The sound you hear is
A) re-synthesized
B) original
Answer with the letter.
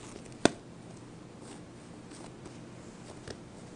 B